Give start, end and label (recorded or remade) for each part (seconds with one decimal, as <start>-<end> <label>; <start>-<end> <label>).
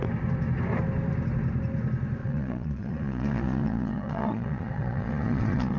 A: 0.0-2.2 recorded; 2.2-5.8 remade